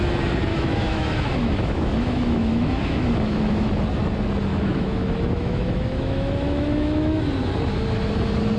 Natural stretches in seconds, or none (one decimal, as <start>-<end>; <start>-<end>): 0.0-0.5; 3.7-4.5; 7.3-8.6